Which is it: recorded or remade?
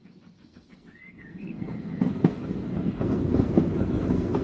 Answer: remade